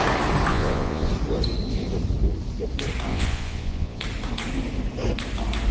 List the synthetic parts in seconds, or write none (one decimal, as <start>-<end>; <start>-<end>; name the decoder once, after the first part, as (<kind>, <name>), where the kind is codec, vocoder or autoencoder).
0.5-1.1 (vocoder, Vocos); 3.1-4.0